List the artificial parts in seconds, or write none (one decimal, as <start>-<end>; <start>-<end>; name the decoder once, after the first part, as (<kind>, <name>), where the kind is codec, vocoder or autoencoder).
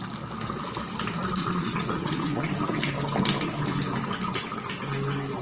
1.4-2.5 (vocoder, Vocos)